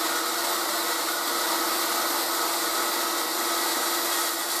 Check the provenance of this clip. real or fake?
real